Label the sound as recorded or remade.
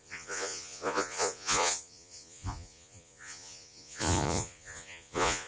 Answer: remade